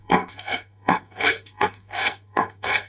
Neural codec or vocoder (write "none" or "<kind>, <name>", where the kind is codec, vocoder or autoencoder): codec, SNAC